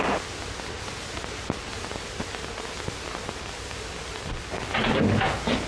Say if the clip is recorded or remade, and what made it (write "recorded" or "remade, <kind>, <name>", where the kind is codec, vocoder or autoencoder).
recorded